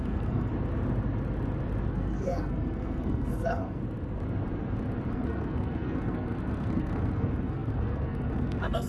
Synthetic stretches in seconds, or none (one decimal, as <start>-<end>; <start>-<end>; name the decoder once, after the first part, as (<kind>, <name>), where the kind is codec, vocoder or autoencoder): 0.0-0.5 (codec, SNAC); 1.9-3.8; 5.1-8.9